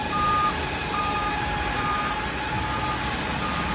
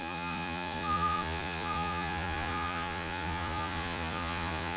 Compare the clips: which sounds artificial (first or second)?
second